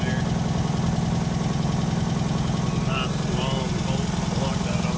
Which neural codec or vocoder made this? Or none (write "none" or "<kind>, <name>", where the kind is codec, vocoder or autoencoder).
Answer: none